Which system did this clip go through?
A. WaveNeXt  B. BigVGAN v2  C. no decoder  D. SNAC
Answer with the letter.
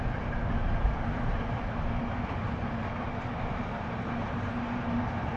B